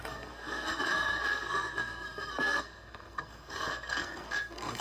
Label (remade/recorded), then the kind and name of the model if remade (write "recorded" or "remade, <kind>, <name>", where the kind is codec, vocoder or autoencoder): remade, codec, SNAC